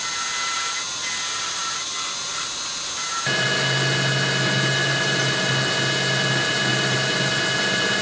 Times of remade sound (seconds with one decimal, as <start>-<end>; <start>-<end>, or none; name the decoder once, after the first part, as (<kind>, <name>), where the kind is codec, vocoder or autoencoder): 4.8-5.5 (vocoder, BigVGAN v2); 6.7-7.3